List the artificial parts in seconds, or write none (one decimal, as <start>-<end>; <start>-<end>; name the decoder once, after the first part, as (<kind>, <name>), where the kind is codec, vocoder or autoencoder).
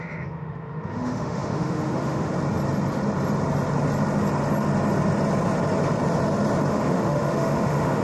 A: 0.0-2.3 (autoencoder, DAC-VAE); 6.7-8.0